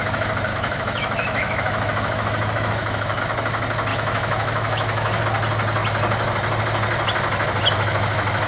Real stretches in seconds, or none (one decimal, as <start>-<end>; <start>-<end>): 0.0-0.5; 3.2-3.9; 5.2-8.5